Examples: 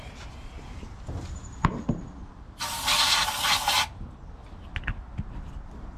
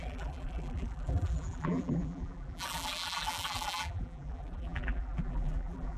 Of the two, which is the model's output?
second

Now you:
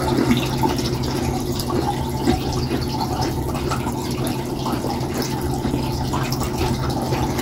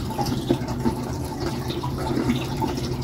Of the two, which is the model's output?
second